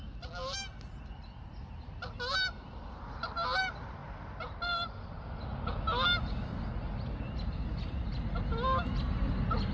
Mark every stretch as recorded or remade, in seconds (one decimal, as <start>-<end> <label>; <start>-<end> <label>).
0.0-9.7 recorded